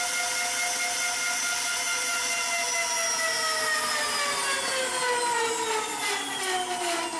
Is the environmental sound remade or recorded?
recorded